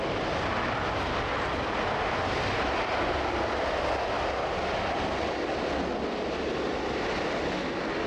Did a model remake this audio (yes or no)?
no